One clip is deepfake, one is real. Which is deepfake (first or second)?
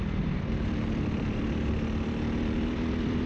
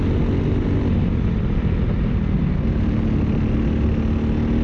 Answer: first